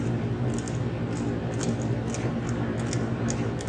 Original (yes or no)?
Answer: yes